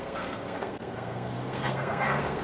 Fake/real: fake